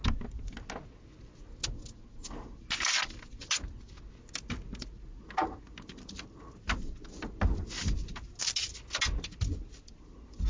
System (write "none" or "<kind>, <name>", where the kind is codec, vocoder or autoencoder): none